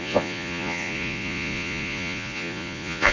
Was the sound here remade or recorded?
remade